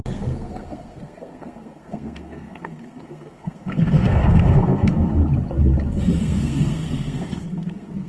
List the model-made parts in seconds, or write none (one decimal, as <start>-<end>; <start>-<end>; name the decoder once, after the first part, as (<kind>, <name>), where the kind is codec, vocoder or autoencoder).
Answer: 0.0-5.2 (codec, SNAC); 6.2-8.1